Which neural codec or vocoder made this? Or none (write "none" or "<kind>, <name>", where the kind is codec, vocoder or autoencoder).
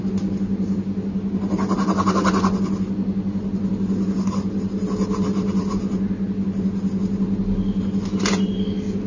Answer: none